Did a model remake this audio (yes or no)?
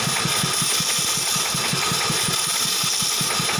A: no